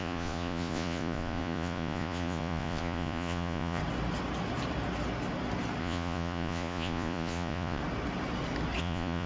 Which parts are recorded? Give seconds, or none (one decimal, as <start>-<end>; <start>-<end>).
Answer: 3.8-5.8; 7.8-8.8